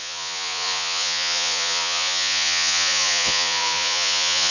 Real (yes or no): no